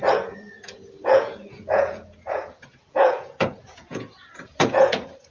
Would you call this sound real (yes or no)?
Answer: no